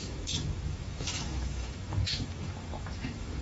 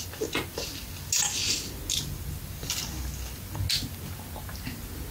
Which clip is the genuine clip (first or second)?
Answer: second